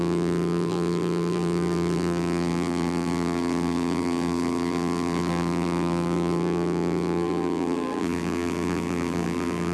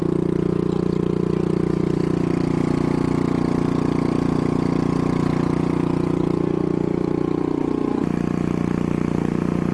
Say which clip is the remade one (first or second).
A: first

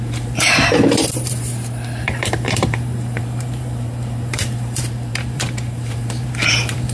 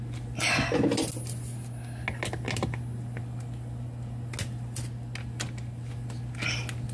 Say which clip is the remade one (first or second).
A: first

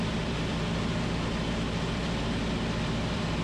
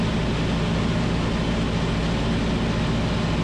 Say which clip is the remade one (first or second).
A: first